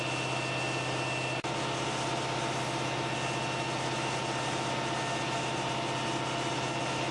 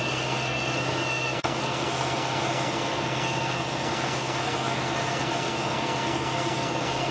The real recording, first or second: first